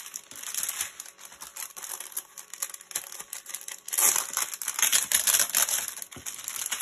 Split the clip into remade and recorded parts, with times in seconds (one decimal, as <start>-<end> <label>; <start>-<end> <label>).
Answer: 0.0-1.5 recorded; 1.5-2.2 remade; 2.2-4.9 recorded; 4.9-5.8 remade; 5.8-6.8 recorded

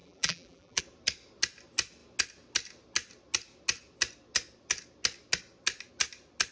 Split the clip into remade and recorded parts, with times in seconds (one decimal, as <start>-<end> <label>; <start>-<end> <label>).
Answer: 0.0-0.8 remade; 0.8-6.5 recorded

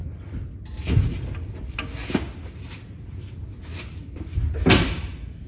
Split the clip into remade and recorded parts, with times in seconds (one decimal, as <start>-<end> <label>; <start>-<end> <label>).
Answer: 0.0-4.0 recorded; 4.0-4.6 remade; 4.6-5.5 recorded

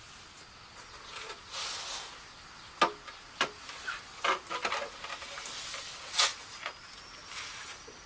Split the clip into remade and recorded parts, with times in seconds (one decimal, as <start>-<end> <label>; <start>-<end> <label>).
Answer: 0.0-8.1 recorded